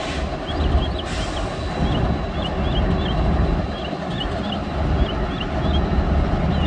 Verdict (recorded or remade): recorded